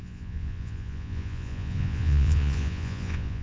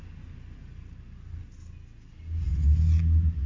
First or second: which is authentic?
second